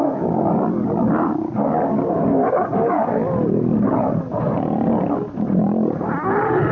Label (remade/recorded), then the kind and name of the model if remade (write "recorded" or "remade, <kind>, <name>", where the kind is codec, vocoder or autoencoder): recorded